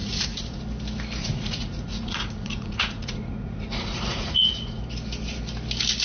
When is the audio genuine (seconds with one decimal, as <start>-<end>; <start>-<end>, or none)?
0.6-1.2; 4.8-6.0

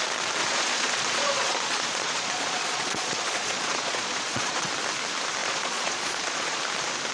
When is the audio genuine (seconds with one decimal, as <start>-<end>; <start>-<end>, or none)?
0.0-0.4; 4.7-5.4; 6.6-7.1

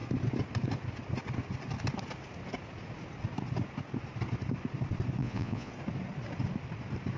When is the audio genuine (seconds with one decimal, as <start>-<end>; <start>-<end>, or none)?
0.0-5.2; 5.7-7.2

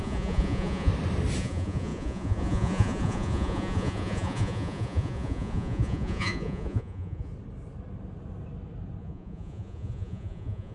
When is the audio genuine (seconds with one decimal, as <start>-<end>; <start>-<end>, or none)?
0.9-1.4; 7.3-9.0

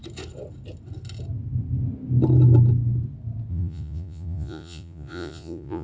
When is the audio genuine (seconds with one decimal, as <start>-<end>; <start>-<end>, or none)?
0.0-3.5

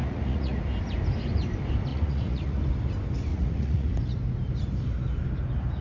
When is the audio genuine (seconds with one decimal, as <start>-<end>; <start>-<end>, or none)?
0.6-1.9; 2.6-3.3; 3.9-5.8